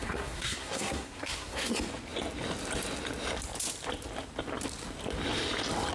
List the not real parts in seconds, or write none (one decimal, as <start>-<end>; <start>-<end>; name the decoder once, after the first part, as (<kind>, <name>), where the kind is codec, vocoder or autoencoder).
0.0-1.7 (codec, SNAC)